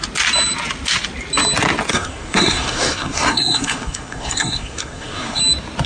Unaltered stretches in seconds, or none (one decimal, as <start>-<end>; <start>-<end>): 0.0-1.9; 5.4-5.9